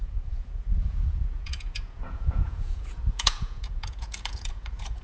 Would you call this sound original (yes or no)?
no